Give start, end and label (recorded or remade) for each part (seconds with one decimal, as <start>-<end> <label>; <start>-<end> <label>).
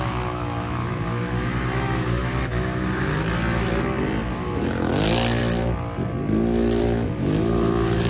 0.0-3.1 remade; 3.1-4.3 recorded; 4.3-5.4 remade; 5.4-6.8 recorded; 6.8-8.1 remade